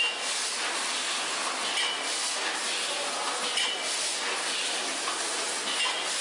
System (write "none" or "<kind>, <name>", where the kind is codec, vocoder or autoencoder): none